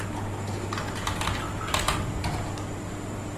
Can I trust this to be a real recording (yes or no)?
yes